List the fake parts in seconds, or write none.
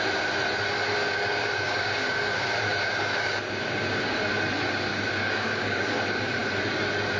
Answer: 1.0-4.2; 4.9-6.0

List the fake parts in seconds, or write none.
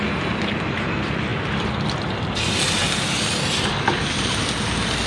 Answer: none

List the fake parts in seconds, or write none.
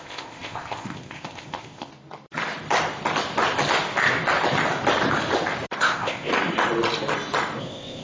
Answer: 0.0-1.9; 5.8-6.3; 7.6-8.0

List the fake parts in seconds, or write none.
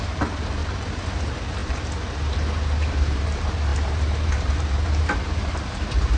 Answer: 0.0-0.6; 1.1-6.2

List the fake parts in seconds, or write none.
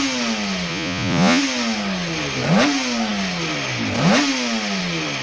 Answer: 0.7-1.4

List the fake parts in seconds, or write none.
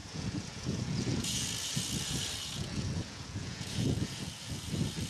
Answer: 0.0-5.1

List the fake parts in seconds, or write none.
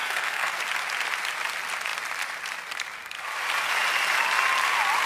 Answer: 0.0-0.6